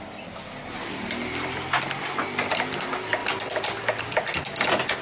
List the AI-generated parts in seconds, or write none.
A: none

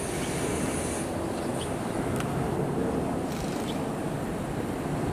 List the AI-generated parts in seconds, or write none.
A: 1.5-2.1 (vocoder, BigVGAN v2)

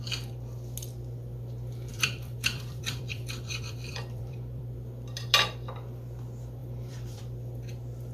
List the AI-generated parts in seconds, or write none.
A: 1.9-4.6 (vocoder, BigVGAN v2); 6.6-7.2

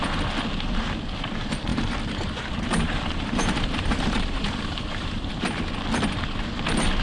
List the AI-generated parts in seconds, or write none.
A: 1.7-5.3 (vocoder, BigVGAN v2)

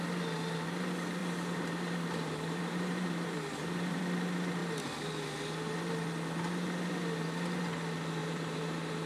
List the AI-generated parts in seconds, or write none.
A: 1.2-4.0 (vocoder, BigVGAN v2); 8.2-9.1

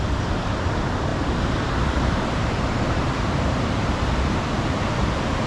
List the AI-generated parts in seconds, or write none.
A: 1.1-4.4 (vocoder, BigVGAN v2)

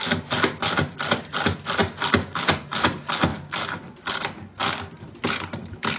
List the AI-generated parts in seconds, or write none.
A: 3.3-3.9 (vocoder, BigVGAN v2)